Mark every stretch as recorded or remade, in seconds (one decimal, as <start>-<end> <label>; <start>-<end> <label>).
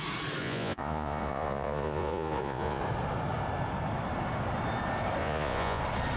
0.0-0.4 recorded; 0.4-2.8 remade; 2.8-5.2 recorded; 5.2-5.8 remade; 5.8-6.2 recorded